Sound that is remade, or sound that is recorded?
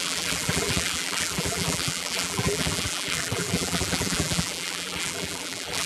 remade